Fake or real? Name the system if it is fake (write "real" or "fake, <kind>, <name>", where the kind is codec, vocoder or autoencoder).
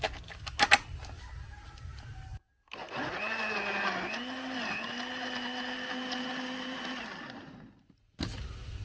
real